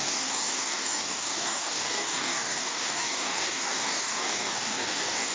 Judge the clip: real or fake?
fake